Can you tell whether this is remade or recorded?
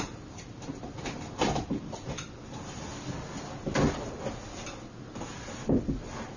recorded